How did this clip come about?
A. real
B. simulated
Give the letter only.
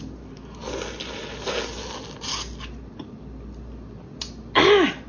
A